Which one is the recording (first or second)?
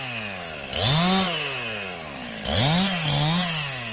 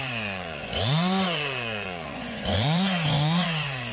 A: first